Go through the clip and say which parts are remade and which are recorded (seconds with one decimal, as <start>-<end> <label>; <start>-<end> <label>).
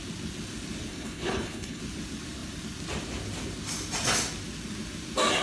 0.0-0.9 recorded; 0.9-1.8 remade; 1.8-5.4 recorded